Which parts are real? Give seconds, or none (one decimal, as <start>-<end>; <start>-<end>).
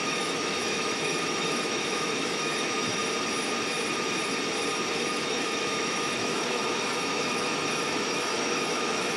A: 3.0-5.1